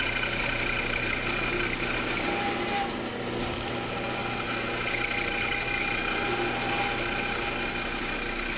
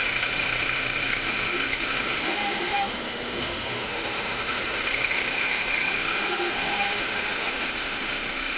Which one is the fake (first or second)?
second